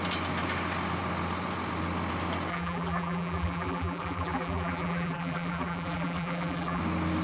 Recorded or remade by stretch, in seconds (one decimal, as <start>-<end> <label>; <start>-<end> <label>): 0.0-2.5 recorded; 2.5-6.8 remade; 6.8-7.2 recorded